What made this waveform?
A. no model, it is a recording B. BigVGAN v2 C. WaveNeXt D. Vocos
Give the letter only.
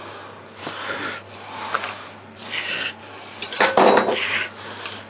A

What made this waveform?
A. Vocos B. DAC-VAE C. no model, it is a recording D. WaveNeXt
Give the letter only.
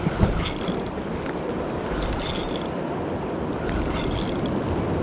C